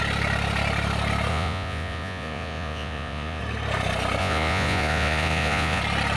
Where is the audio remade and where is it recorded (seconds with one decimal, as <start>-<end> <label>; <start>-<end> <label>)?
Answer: 0.0-1.3 recorded; 1.3-3.4 remade; 3.4-4.2 recorded; 4.2-5.8 remade; 5.8-6.2 recorded